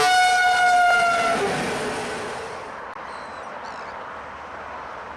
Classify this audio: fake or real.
real